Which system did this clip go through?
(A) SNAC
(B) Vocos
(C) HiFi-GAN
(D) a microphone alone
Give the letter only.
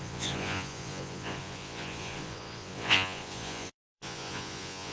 B